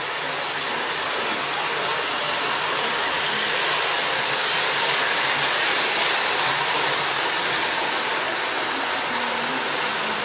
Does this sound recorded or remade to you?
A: recorded